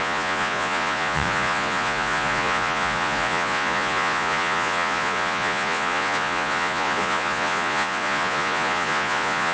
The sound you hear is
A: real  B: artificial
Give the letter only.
B